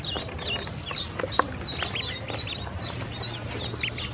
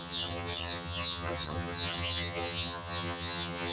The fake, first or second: second